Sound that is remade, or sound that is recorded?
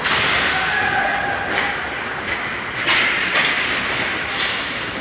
recorded